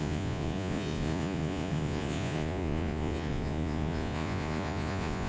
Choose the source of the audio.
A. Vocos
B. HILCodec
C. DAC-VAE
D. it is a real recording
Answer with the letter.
A